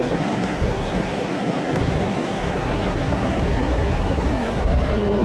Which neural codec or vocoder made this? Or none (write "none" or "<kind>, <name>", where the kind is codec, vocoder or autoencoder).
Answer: codec, SNAC